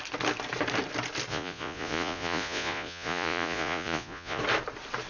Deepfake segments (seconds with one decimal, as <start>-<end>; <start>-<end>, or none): 1.3-4.4